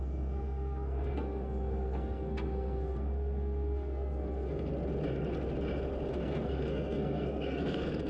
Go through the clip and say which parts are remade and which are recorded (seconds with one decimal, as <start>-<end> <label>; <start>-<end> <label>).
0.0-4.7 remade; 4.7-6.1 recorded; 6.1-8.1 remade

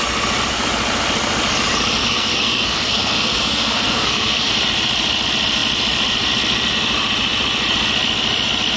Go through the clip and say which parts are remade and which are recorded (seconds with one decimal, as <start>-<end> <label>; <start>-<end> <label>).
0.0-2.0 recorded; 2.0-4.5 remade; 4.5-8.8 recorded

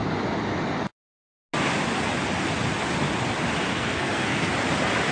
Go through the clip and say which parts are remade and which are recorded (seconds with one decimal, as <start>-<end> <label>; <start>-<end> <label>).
0.0-3.7 recorded; 3.7-4.5 remade; 4.5-5.1 recorded

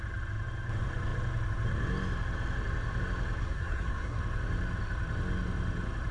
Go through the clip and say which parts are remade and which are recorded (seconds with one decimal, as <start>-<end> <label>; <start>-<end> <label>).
0.0-3.4 recorded; 3.4-4.2 remade; 4.2-6.1 recorded